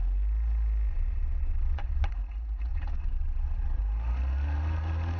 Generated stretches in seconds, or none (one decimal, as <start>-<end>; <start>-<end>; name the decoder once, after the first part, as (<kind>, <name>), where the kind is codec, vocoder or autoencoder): 0.9-2.1 (vocoder, Vocos); 2.7-3.8